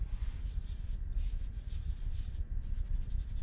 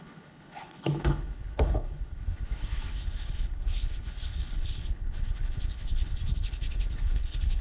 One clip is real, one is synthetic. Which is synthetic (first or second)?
second